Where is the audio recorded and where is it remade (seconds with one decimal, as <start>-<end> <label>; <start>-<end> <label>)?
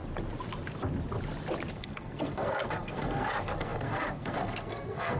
0.0-1.7 recorded; 1.7-5.2 remade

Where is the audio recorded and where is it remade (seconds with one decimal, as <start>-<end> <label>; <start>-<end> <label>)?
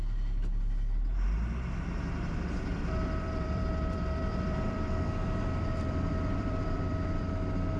0.0-2.7 recorded; 2.7-7.3 remade; 7.3-7.8 recorded